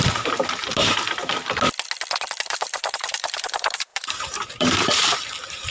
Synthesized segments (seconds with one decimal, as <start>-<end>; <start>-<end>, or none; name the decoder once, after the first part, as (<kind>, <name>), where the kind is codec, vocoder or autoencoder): 0.0-0.6 (vocoder, BigVGAN v2); 2.4-5.7